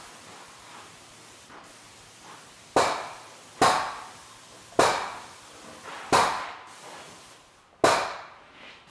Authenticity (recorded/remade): recorded